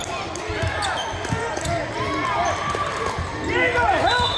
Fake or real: real